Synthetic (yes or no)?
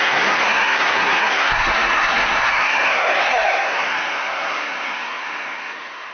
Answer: yes